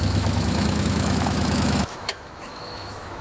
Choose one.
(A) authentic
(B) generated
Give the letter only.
B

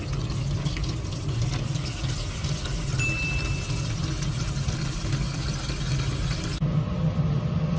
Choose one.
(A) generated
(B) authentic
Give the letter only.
B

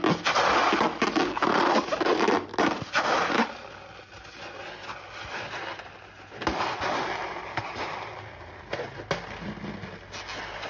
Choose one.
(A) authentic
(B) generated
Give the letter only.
A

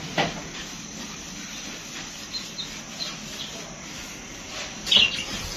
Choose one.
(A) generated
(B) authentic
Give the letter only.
B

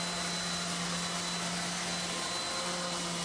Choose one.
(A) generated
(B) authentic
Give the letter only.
B